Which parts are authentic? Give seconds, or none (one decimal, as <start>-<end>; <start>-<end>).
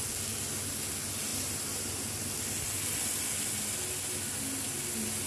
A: 0.0-5.3